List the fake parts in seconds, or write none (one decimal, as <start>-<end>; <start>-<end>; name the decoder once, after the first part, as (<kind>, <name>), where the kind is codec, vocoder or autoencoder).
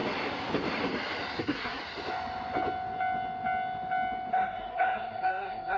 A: 1.4-1.8 (codec, SNAC); 4.3-5.8